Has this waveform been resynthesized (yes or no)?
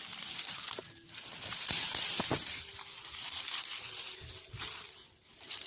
no